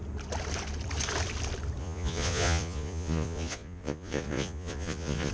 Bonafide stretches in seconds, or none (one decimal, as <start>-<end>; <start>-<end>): 0.0-1.8